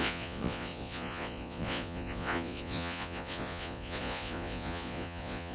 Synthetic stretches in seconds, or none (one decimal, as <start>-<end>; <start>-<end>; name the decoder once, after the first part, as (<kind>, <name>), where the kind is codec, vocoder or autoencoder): 0.0-5.5 (vocoder, Vocos)